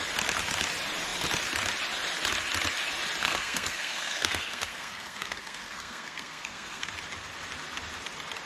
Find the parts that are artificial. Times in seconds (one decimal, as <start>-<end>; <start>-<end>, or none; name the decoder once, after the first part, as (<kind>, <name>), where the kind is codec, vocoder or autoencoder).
3.2-6.9 (codec, SNAC)